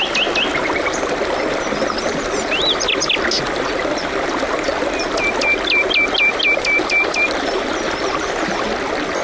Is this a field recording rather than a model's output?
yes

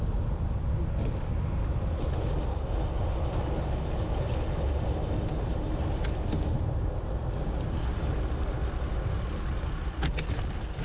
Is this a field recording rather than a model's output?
yes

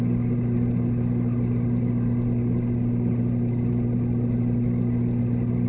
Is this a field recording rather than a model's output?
yes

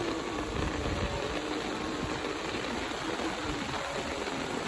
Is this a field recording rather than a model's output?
yes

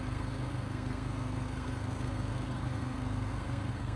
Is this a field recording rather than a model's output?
no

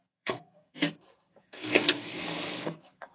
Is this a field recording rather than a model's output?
no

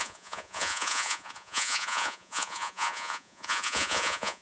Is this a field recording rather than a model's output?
no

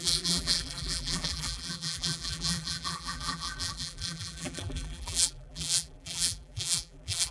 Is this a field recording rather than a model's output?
no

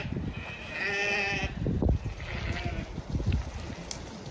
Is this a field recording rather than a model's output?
yes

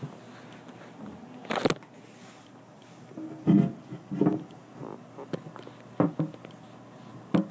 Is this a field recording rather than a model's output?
yes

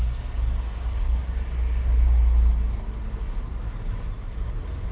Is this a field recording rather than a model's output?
yes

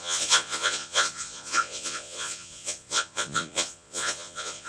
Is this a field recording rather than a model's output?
no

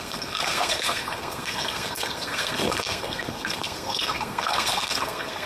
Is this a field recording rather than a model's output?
no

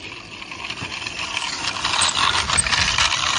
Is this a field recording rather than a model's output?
yes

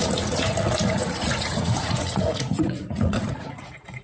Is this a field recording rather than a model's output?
no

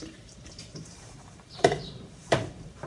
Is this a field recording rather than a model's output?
no